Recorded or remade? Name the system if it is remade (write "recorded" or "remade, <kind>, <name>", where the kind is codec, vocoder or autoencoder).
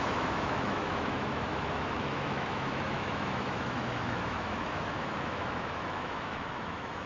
remade, autoencoder, DAC-VAE